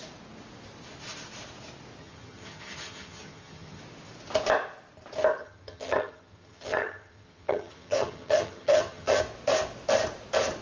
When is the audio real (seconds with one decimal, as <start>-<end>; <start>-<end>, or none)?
0.0-2.0; 3.8-5.4; 9.2-10.6